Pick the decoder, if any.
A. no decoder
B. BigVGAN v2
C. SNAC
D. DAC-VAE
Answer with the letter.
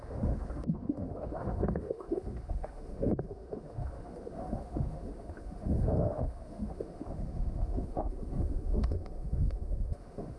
D